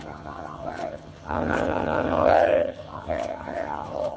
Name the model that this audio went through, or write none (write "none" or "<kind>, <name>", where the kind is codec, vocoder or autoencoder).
vocoder, HiFi-GAN